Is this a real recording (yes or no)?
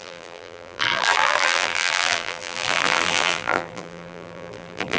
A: no